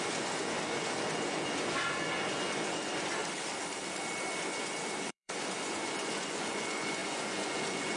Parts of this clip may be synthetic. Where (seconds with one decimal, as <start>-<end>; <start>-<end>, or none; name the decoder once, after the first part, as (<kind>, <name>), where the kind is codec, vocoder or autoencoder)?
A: 0.0-3.2 (vocoder, Vocos); 4.4-8.0